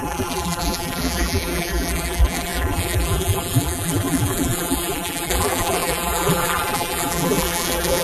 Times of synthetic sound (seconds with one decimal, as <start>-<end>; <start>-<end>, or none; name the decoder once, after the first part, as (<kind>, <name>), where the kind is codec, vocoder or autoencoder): 0.0-8.0 (vocoder, BigVGAN v2)